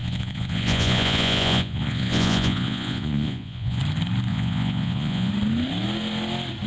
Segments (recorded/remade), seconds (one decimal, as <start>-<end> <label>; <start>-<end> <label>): 0.0-3.8 remade; 3.8-4.3 recorded; 4.3-5.3 remade; 5.3-6.7 recorded